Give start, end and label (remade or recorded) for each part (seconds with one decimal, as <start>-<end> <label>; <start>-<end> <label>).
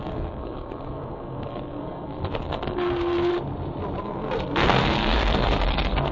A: 0.0-3.3 remade; 3.3-4.0 recorded; 4.0-6.1 remade